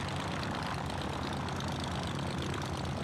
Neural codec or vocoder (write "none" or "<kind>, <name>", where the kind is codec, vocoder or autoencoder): none